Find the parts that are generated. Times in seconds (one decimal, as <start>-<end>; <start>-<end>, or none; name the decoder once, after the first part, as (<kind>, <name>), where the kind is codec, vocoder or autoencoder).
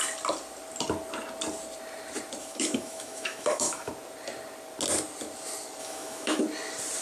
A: 2.4-3.9 (autoencoder, DAC-VAE); 5.8-6.4